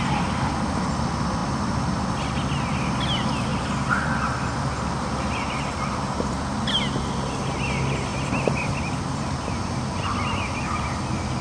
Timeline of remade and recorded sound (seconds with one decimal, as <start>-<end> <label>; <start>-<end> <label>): 0.0-3.5 recorded; 3.5-6.7 remade; 6.7-8.1 recorded; 8.1-9.3 remade; 9.3-11.4 recorded